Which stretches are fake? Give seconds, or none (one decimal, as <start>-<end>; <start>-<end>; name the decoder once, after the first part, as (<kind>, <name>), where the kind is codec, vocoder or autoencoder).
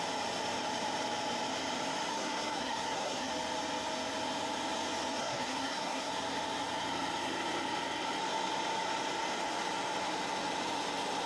2.1-3.3 (codec, SNAC); 5.2-6.1